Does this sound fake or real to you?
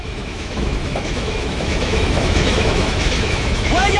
fake